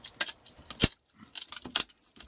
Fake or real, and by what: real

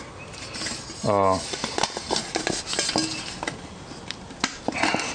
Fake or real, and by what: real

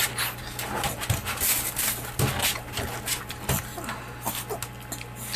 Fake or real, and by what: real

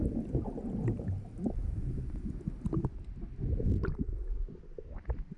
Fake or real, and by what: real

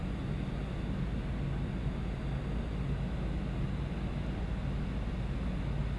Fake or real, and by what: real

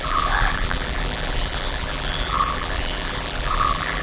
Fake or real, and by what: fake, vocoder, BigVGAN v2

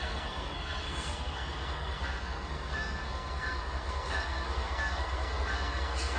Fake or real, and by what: fake, codec, SNAC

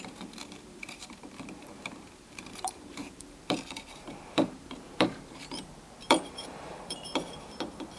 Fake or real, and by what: fake, vocoder, BigVGAN v2